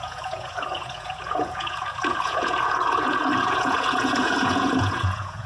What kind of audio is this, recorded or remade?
remade